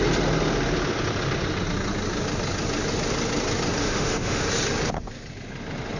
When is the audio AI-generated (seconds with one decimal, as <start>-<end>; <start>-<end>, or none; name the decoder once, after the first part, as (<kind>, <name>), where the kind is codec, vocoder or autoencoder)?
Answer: 3.8-4.4 (autoencoder, DAC-VAE)